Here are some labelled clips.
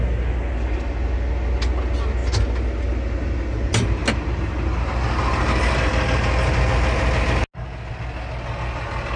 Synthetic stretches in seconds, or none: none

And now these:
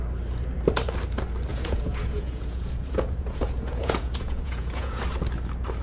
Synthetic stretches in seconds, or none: 1.5-5.0 (vocoder, Vocos)

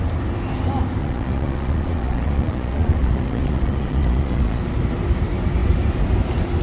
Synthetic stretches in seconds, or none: 1.0-4.6 (vocoder, Vocos)